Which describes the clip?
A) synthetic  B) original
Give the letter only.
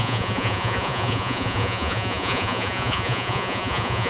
A